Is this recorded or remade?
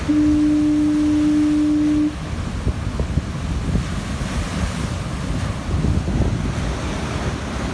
recorded